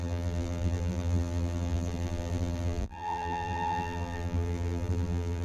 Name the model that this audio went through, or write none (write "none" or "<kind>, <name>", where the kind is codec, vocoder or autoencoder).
vocoder, BigVGAN v2